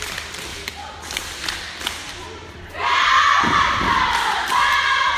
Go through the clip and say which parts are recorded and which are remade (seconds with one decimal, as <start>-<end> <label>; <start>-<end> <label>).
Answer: 0.0-5.2 recorded